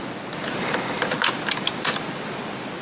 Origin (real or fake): real